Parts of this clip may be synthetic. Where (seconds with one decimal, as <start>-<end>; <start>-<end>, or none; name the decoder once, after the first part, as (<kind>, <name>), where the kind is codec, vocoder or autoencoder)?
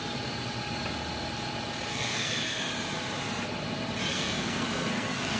1.9-2.6 (codec, SNAC); 4.1-5.4